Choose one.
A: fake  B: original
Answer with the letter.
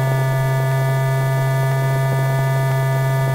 B